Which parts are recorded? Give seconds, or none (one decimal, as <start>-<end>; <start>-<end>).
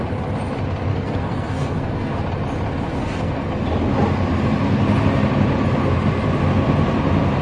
0.0-0.9; 2.2-3.0; 3.5-7.4